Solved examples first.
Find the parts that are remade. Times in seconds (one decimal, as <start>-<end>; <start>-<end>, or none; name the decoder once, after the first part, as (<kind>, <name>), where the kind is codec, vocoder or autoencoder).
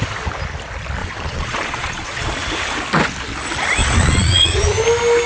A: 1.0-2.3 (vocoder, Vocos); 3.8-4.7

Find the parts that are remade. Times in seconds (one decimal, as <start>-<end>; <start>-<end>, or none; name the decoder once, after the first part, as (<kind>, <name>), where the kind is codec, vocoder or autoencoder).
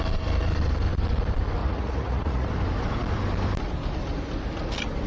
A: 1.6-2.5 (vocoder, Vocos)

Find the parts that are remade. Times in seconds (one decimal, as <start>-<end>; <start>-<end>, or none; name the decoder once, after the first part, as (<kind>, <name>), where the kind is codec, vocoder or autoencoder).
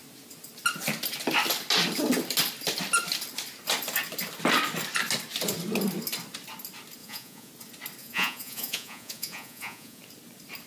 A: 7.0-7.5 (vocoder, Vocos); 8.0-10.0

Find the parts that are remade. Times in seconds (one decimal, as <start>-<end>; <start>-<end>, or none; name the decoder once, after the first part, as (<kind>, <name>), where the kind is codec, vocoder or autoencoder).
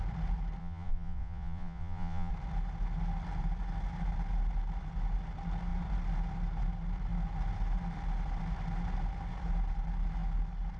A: 0.6-2.3 (vocoder, Vocos)